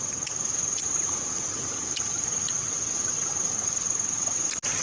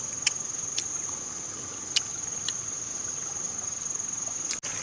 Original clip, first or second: second